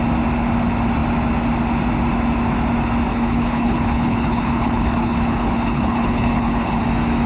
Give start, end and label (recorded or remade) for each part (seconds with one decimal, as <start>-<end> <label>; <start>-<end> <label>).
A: 0.0-3.1 recorded; 3.1-6.8 remade; 6.8-7.3 recorded

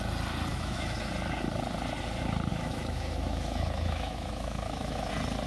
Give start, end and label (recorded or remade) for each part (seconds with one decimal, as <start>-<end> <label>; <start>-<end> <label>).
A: 0.0-0.5 recorded; 0.5-1.1 remade; 1.1-2.5 recorded; 2.5-5.1 remade; 5.1-5.5 recorded

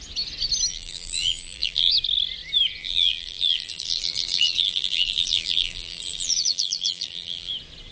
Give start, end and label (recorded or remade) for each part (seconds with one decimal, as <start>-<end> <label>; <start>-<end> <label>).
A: 0.0-0.7 recorded; 0.7-1.9 remade; 1.9-2.8 recorded; 2.8-7.5 remade; 7.5-7.9 recorded

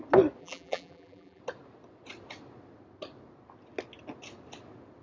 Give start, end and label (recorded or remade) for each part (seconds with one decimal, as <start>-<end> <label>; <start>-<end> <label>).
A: 0.0-0.4 recorded; 0.4-1.4 remade; 1.4-5.0 recorded